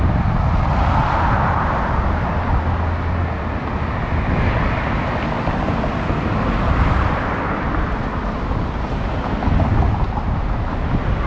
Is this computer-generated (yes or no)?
no